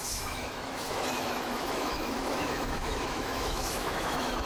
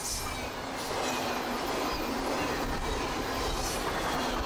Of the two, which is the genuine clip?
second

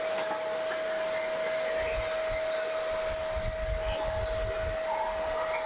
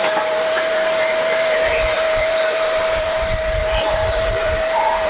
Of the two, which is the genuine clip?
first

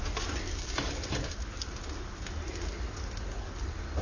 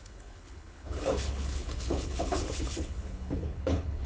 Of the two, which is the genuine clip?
first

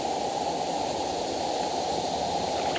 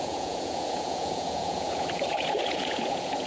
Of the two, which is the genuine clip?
first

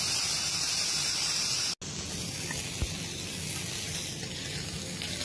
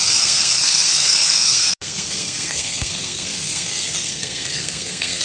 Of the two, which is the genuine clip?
first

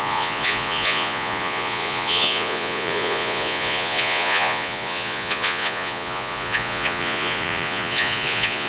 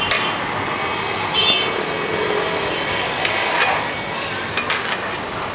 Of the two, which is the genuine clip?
second